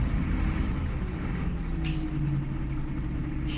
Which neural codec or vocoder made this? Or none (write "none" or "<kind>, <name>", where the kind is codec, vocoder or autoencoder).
none